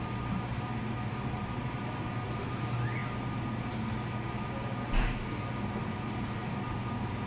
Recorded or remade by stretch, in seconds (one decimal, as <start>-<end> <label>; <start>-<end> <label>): 0.0-7.3 recorded